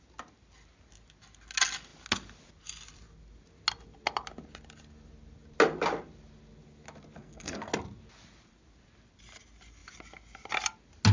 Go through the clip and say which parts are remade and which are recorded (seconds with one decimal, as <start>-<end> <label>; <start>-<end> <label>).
0.0-7.2 recorded; 7.2-7.7 remade; 7.7-11.1 recorded